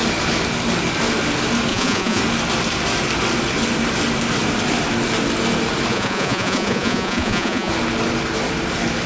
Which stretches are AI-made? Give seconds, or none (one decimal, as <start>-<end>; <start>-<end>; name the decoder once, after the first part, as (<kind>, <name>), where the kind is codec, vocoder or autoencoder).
1.7-2.2 (vocoder, Vocos); 5.9-7.7